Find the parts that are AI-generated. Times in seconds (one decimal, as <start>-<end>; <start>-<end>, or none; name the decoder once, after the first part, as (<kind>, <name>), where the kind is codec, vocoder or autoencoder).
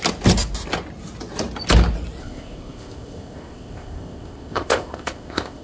2.2-5.6 (codec, ZipCodec)